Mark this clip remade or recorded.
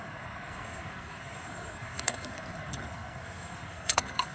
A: remade